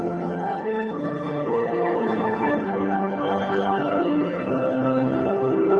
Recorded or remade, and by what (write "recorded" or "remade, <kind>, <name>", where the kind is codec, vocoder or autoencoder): remade, codec, HILCodec